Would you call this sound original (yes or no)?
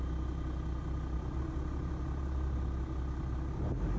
yes